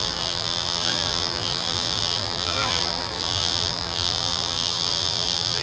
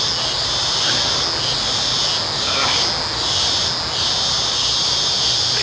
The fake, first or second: first